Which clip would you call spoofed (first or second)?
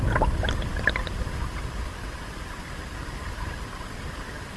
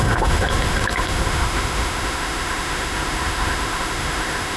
second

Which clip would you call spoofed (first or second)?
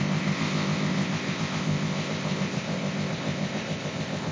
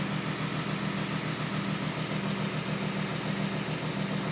first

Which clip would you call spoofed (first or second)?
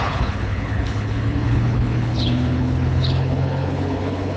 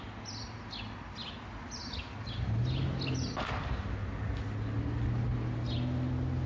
first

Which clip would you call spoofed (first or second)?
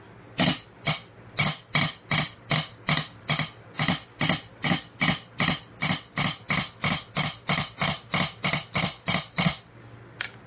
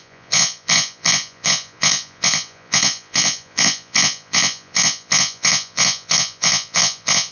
second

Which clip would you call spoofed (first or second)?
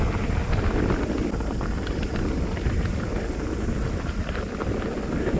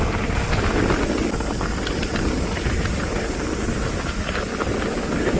first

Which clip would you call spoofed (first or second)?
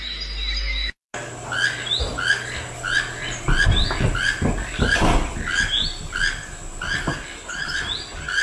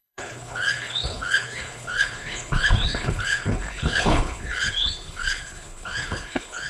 second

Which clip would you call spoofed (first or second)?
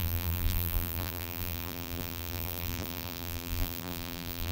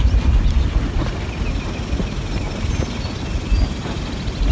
first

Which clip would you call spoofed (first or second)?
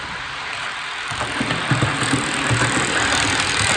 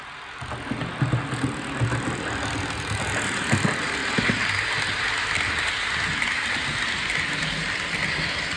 first